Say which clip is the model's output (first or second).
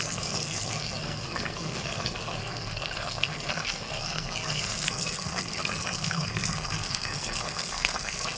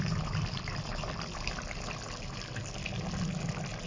first